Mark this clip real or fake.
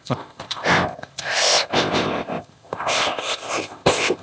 fake